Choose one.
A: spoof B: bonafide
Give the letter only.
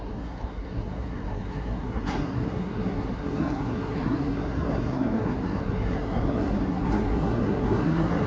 A